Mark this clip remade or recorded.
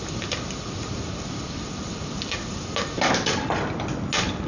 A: recorded